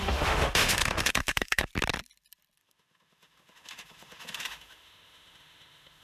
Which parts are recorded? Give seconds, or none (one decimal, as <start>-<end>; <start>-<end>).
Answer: 1.7-2.6